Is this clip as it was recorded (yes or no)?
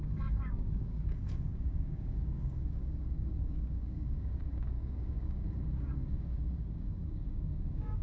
no